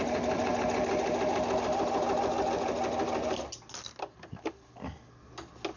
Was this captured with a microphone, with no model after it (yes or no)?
yes